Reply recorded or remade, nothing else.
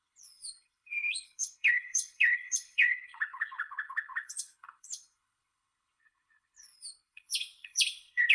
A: remade